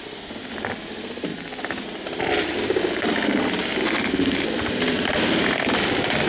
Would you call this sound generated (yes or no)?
no